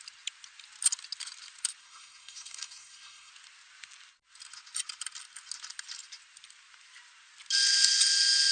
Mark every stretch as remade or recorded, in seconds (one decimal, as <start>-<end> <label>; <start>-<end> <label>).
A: 0.0-1.8 recorded; 1.8-3.3 remade; 3.3-8.5 recorded